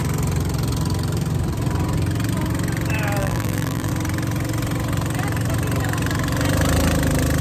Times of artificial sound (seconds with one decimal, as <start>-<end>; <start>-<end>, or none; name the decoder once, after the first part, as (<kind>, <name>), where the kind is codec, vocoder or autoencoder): 3.2-3.9 (vocoder, BigVGAN v2)